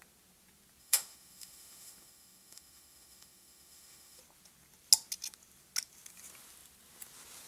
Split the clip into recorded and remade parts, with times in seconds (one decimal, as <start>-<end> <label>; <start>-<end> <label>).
0.0-0.8 recorded; 0.8-4.2 remade; 4.2-7.5 recorded